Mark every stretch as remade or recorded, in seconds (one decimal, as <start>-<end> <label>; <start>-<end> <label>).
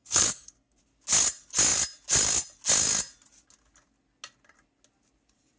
0.0-0.8 remade; 0.8-5.6 recorded